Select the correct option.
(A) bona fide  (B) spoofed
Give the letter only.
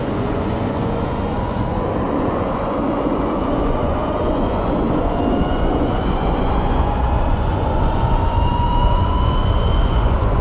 B